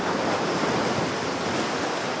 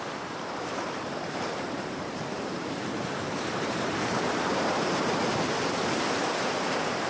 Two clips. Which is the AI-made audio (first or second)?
second